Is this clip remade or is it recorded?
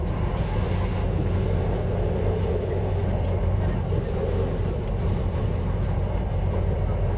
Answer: recorded